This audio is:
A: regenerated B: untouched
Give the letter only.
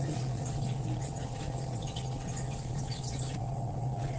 A